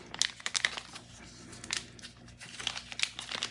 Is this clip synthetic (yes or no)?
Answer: no